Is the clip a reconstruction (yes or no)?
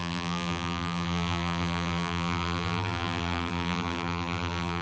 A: yes